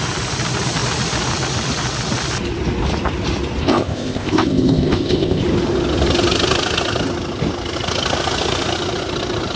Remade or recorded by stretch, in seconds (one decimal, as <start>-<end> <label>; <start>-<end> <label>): 0.0-3.6 recorded; 3.6-5.4 remade; 5.4-9.6 recorded